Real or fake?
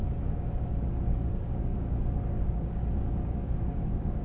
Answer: fake